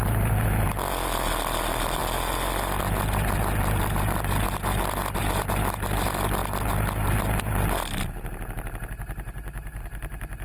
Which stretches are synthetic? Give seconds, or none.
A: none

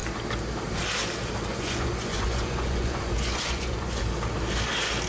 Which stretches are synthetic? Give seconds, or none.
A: 1.5-4.0 (vocoder, Vocos)

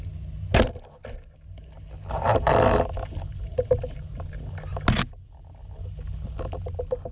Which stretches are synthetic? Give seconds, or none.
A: none

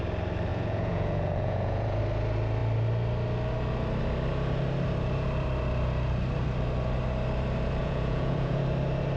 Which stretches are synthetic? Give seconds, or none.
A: 0.5-2.0 (vocoder, Vocos); 7.8-8.6

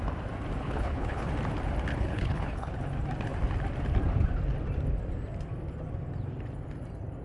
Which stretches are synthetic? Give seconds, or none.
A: 0.6-1.3 (codec, HILCodec); 1.9-2.8

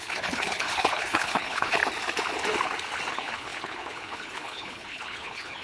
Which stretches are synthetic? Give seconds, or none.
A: 0.0-1.8 (codec, HILCodec); 3.1-5.6

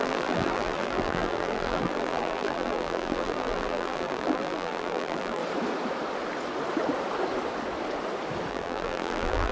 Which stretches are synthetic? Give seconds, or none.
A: 0.0-5.4 (vocoder, BigVGAN v2); 8.5-9.5

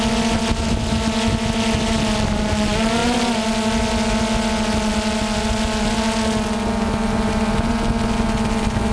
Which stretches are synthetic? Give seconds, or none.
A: none